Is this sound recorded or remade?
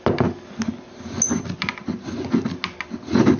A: recorded